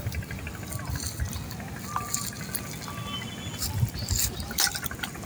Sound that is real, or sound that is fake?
real